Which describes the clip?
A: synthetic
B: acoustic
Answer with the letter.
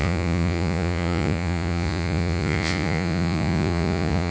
A